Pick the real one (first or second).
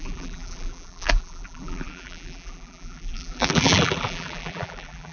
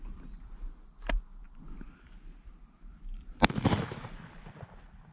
second